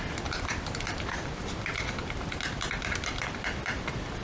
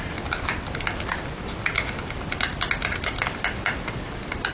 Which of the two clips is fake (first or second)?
first